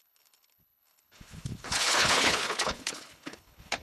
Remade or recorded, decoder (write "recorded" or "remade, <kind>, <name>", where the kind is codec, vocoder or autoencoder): remade, codec, HILCodec